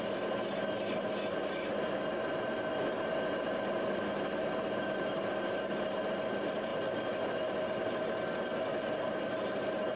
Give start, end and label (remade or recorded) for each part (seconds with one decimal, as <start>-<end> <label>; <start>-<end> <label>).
0.0-10.0 recorded